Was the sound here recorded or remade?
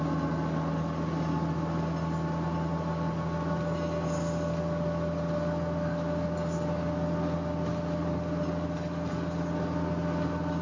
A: recorded